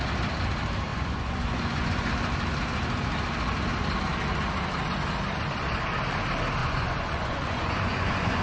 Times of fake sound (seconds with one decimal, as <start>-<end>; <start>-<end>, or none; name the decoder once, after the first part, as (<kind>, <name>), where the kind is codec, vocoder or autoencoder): 0.9-2.1 (vocoder, Vocos); 6.6-8.4

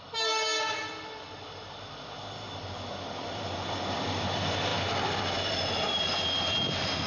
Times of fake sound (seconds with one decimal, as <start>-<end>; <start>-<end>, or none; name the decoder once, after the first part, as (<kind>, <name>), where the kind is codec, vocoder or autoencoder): none

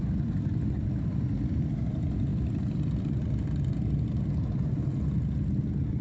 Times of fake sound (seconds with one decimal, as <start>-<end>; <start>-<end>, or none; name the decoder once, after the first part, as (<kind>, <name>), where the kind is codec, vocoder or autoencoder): none

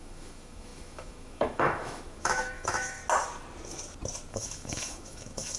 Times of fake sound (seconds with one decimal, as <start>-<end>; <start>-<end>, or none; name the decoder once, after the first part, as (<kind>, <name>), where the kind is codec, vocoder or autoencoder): 0.0-3.0 (autoencoder, DAC-VAE); 4.3-5.6

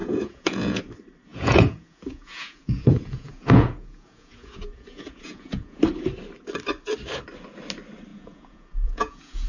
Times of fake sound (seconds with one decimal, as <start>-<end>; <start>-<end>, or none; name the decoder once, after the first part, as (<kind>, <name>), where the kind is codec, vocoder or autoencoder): 0.0-0.8 (vocoder, Vocos); 1.3-5.8; 8.1-9.5

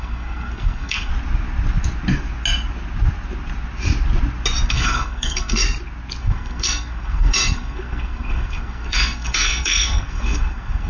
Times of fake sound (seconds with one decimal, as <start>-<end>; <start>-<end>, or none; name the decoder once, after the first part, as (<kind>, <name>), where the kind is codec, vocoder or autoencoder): 0.0-1.1 (codec, SNAC); 4.7-5.6; 6.2-10.9